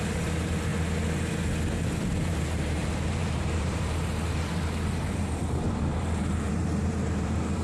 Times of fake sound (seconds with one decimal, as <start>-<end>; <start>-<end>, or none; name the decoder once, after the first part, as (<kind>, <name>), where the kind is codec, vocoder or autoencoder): 0.0-0.7 (vocoder, BigVGAN v2); 2.0-7.6